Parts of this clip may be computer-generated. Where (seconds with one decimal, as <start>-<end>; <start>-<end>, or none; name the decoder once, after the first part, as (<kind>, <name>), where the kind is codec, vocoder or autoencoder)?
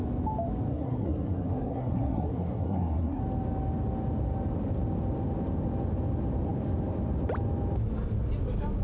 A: 0.7-3.2 (codec, SNAC)